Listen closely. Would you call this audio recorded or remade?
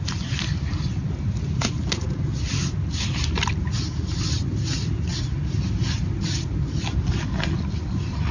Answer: recorded